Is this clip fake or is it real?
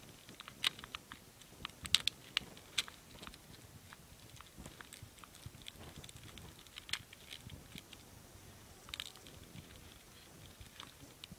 real